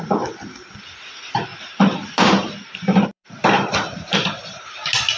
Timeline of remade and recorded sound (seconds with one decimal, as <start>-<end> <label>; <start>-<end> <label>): 0.0-1.5 recorded; 1.5-4.6 remade; 4.6-5.2 recorded